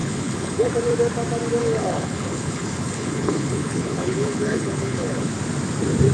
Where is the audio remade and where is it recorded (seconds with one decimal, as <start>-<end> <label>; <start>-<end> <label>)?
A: 0.0-0.7 remade; 0.7-1.6 recorded; 1.6-5.3 remade; 5.3-6.1 recorded